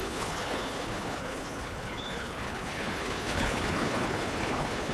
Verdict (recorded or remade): remade